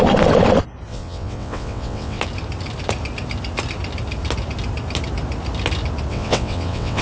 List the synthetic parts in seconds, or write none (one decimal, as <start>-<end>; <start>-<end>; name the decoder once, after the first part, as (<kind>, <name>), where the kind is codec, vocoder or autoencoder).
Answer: 0.9-2.2 (vocoder, WaveNeXt); 6.1-7.0